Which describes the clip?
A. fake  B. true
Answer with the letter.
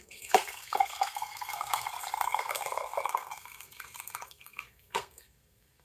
A